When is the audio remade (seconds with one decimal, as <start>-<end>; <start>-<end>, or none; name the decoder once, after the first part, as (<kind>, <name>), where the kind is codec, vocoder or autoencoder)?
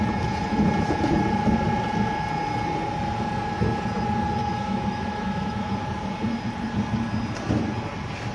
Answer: 4.4-5.7 (autoencoder, DAC-VAE)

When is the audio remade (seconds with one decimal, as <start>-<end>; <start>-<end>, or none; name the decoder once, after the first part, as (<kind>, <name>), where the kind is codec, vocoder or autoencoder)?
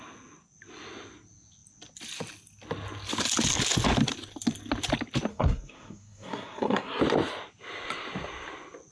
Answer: 5.3-7.0 (codec, SNAC)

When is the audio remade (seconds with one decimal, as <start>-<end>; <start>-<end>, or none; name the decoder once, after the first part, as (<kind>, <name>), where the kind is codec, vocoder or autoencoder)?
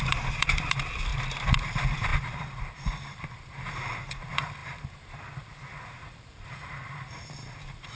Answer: 0.0-1.1 (vocoder, BigVGAN v2); 1.6-8.0